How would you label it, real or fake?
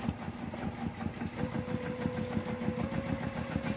real